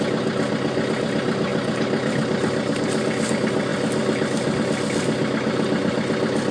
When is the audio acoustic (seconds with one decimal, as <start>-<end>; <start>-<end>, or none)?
0.0-6.5